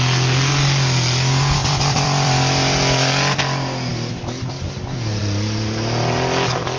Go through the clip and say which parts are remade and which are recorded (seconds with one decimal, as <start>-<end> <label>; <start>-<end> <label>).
0.0-1.6 recorded; 1.6-2.8 remade; 2.8-6.8 recorded